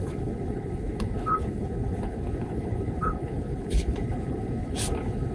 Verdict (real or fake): fake